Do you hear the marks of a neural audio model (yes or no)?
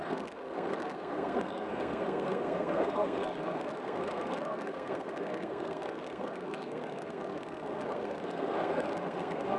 yes